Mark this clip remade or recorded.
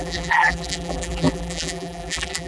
remade